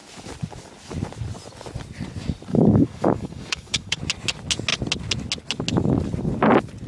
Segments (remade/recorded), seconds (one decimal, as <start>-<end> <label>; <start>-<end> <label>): 0.0-2.5 recorded; 2.5-4.0 remade; 4.0-6.9 recorded